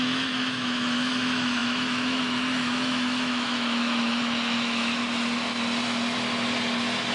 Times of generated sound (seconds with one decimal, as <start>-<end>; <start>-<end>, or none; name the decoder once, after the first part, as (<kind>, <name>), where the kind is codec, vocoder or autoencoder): 0.0-5.0 (autoencoder, DAC-VAE)

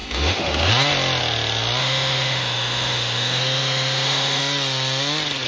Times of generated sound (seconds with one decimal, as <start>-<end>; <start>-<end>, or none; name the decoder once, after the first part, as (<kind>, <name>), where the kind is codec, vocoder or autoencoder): 0.0-0.7 (autoencoder, DAC-VAE); 1.8-4.4

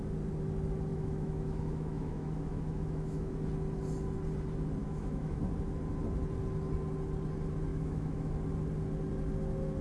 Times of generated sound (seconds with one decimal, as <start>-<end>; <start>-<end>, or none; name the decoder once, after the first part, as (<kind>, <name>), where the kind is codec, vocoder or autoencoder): 0.9-3.3 (autoencoder, DAC-VAE); 4.8-5.4; 7.7-8.3

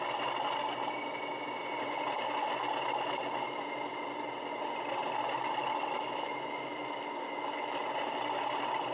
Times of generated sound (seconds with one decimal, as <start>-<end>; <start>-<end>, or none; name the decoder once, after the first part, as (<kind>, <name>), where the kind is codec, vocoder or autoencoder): 5.6-7.8 (autoencoder, DAC-VAE)

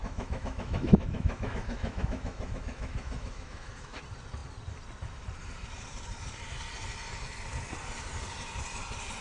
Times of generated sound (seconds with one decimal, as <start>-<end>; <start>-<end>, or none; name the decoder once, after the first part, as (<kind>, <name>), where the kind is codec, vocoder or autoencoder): 0.0-4.0 (autoencoder, DAC-VAE)

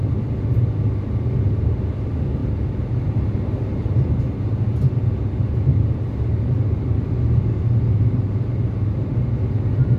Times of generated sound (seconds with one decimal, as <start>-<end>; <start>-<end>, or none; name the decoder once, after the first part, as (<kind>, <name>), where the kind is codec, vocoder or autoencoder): none

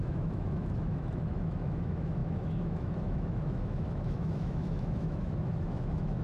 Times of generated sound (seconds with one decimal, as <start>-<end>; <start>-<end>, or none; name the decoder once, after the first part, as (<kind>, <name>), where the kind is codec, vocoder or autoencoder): 0.0-6.2 (autoencoder, DAC-VAE)